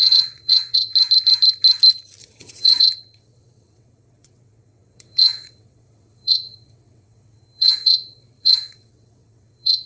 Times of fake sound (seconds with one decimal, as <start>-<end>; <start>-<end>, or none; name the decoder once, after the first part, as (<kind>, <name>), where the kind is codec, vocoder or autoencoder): 0.0-0.9 (vocoder, WaveNeXt); 2.2-9.9